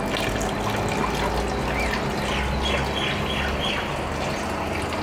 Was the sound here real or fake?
real